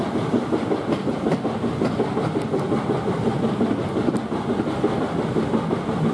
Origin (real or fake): real